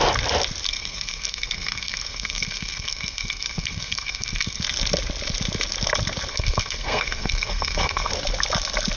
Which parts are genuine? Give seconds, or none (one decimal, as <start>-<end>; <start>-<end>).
0.0-0.7; 4.6-6.3; 8.1-9.0